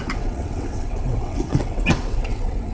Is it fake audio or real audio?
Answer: fake